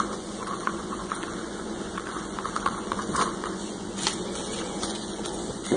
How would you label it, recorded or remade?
remade